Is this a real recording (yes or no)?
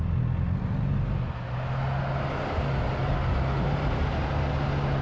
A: yes